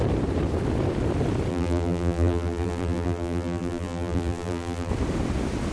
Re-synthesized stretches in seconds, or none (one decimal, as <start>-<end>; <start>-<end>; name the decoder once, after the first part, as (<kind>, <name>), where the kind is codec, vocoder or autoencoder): 1.5-4.9 (vocoder, BigVGAN v2)